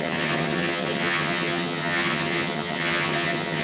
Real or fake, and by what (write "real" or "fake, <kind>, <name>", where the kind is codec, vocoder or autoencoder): fake, vocoder, HiFi-GAN